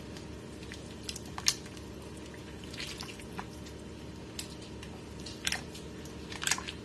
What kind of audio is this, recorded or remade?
recorded